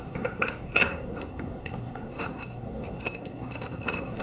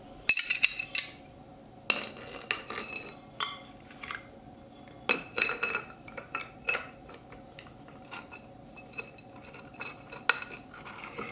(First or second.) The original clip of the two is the second